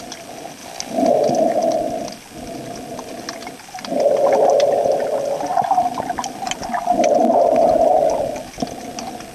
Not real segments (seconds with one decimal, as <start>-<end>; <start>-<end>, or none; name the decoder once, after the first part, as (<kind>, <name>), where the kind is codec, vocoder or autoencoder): none